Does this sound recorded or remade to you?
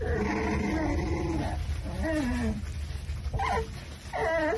recorded